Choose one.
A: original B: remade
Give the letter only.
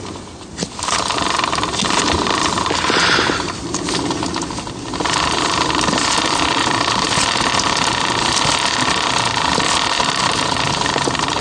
A